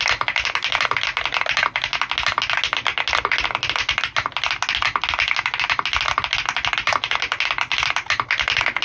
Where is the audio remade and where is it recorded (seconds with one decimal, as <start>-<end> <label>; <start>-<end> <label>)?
0.0-8.8 recorded